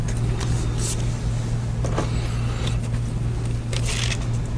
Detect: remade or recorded recorded